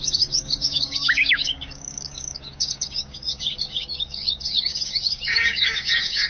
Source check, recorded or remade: remade